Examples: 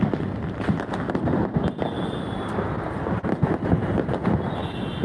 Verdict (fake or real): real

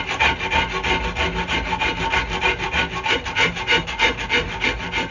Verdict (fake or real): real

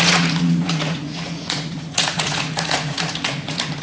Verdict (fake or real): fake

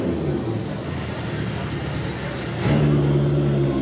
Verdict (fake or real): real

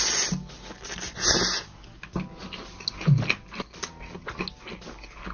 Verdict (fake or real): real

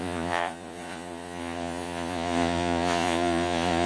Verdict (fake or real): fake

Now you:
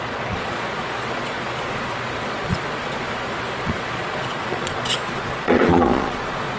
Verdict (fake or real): fake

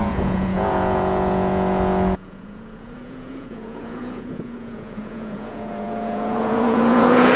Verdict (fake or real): fake